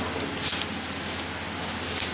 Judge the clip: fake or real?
real